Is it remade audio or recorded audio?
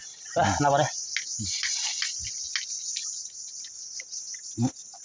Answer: recorded